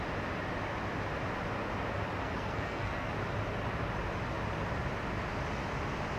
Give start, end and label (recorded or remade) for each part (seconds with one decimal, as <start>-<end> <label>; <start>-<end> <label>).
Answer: 0.0-2.2 recorded; 2.2-3.1 remade; 3.1-6.2 recorded